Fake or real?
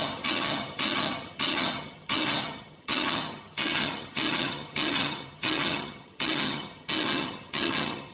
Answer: fake